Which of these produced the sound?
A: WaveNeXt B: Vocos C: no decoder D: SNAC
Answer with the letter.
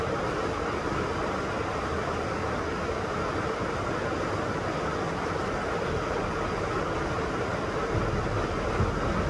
C